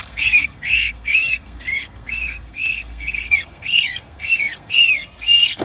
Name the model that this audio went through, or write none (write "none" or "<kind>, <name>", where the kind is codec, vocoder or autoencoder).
codec, SNAC